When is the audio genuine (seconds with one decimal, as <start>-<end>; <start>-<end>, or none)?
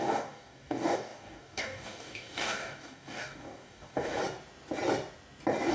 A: 4.2-5.7